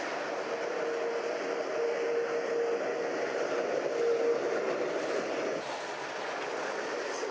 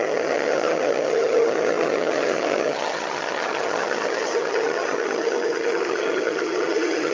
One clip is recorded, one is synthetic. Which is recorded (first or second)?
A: first